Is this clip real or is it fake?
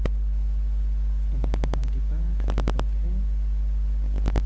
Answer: real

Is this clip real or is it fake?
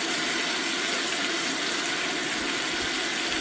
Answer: real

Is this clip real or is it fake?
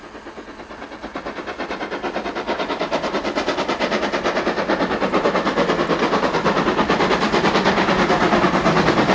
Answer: real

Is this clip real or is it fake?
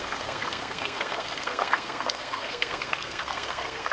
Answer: fake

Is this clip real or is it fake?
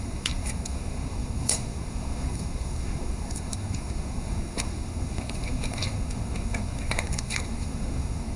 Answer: fake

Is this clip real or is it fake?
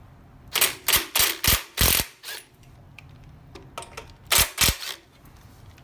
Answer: real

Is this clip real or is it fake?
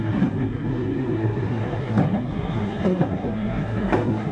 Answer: fake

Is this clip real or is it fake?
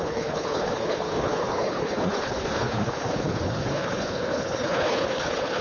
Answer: fake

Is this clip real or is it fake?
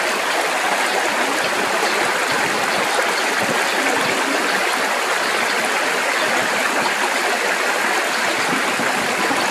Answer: real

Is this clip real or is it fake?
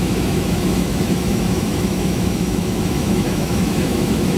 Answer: fake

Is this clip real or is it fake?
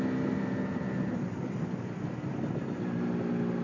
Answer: real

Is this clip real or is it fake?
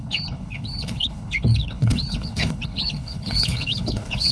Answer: fake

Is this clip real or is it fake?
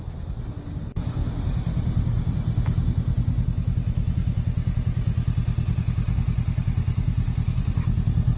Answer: real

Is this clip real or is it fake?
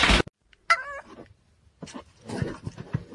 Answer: real